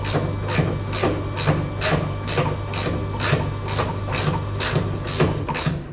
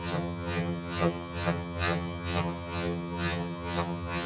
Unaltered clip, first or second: first